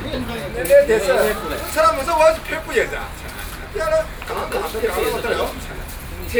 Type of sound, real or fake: real